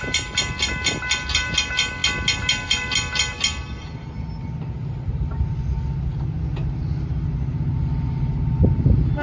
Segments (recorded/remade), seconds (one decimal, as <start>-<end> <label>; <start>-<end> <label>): 0.0-9.2 recorded